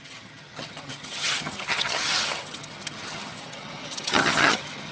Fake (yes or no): yes